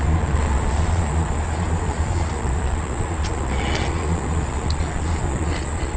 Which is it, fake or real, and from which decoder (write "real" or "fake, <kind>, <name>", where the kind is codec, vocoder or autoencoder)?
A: fake, vocoder, Vocos